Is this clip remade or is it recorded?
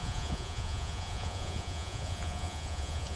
remade